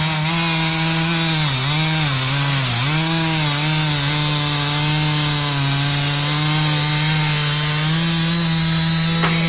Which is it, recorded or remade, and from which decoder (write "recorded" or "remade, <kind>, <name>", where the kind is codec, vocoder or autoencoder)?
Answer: recorded